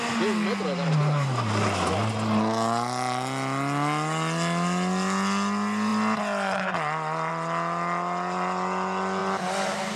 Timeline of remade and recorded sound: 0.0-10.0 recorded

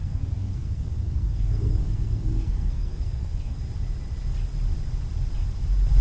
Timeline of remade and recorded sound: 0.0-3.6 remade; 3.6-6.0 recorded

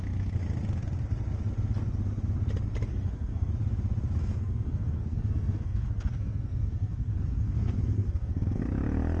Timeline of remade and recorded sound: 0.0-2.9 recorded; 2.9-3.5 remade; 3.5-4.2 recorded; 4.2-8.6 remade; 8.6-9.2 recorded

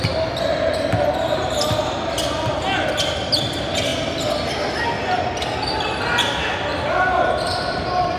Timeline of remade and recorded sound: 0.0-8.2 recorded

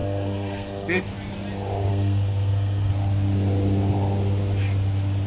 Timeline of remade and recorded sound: 0.0-1.0 remade; 1.0-1.9 recorded; 1.9-2.9 remade; 2.9-5.3 recorded

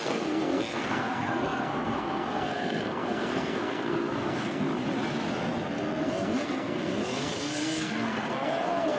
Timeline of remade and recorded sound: 0.0-4.7 remade; 4.7-6.0 recorded; 6.0-9.0 remade

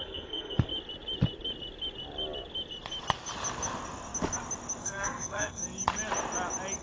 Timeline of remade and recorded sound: 0.0-0.7 remade; 0.7-4.8 recorded; 4.8-5.6 remade; 5.6-6.8 recorded

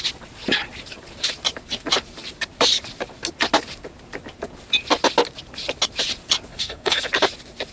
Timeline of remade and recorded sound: 0.0-6.5 recorded; 6.5-7.1 remade; 7.1-7.7 recorded